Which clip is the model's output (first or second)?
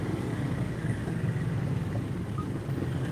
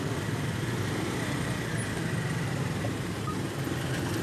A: first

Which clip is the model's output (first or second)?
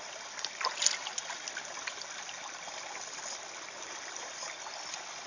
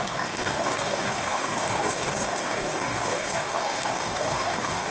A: second